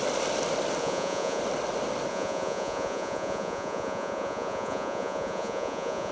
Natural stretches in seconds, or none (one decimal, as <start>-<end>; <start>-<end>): 0.0-0.8; 1.4-2.1